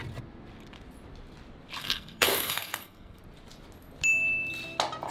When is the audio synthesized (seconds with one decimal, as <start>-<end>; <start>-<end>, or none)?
1.8-3.2